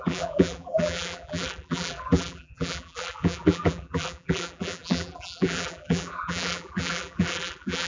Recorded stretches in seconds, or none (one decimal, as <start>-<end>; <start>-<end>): none